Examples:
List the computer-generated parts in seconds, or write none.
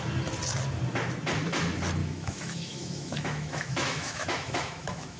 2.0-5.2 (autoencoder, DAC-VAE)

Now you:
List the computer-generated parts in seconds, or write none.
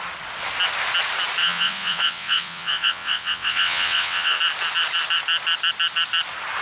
1.4-4.4 (vocoder, WaveNeXt)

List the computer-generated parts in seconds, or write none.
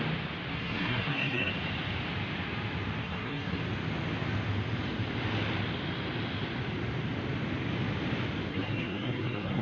0.5-1.5 (codec, SNAC); 3.0-3.6; 8.5-9.6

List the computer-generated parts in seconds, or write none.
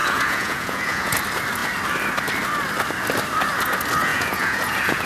0.0-1.2 (vocoder, Vocos); 4.1-5.1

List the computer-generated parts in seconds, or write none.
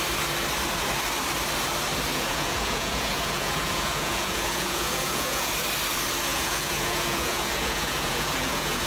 2.1-5.5 (vocoder, Vocos); 6.3-8.9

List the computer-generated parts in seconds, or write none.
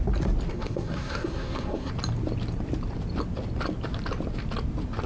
0.5-1.9 (codec, SNAC)